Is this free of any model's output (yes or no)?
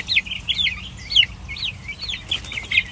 yes